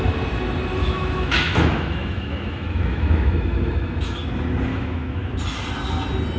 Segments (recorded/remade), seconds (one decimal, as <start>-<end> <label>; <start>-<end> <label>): 0.0-0.8 recorded; 0.8-4.3 remade; 4.3-4.7 recorded; 4.7-5.4 remade; 5.4-6.4 recorded